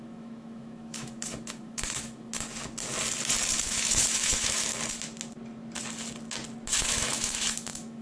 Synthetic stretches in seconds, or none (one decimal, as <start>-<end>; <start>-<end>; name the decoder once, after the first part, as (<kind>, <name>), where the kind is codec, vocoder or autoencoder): 0.0-2.3 (autoencoder, DAC-VAE); 3.6-4.7; 6.8-8.0